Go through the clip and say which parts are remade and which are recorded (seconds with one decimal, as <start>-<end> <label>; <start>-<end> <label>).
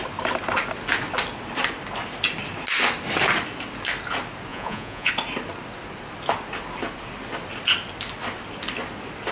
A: 0.0-4.5 recorded; 4.5-5.1 remade; 5.1-9.3 recorded